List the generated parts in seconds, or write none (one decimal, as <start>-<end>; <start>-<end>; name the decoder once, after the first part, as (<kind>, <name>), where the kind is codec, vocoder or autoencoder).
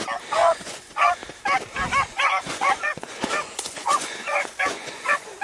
0.4-1.2 (vocoder, Vocos); 2.1-5.4